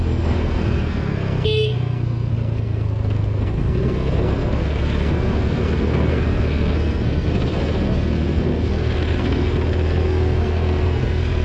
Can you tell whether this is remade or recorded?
remade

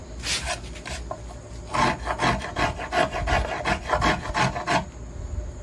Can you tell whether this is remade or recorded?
recorded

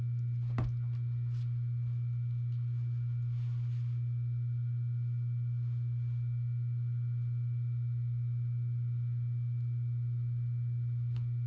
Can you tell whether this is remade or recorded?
recorded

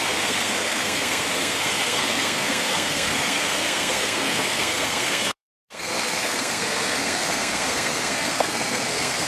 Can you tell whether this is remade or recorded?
remade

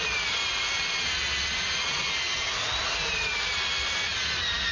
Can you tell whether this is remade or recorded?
recorded